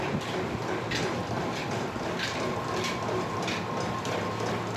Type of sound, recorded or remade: recorded